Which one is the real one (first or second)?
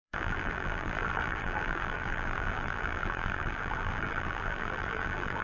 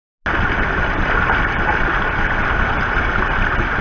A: second